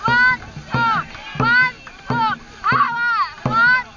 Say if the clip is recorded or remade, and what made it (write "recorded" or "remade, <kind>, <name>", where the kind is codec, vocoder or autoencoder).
recorded